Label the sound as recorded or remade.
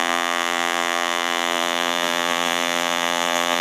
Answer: remade